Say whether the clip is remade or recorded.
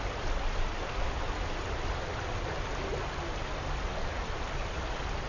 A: recorded